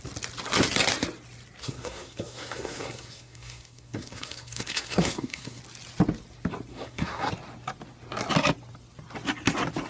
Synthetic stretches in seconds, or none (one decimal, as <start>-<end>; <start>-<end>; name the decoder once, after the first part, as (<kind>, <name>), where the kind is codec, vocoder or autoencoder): 1.6-5.6 (codec, SNAC); 6.7-7.3